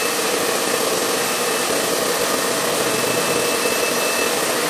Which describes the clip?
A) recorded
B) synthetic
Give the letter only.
A